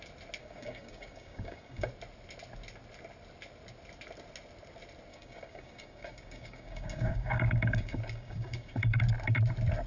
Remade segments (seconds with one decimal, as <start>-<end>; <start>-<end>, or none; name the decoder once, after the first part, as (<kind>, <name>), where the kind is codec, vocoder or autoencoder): 0.4-1.9 (codec, DAC); 5.1-9.0